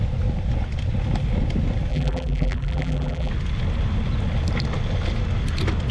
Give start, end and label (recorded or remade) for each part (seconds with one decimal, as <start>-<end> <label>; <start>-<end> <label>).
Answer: 0.0-1.9 recorded; 1.9-3.3 remade; 3.3-5.9 recorded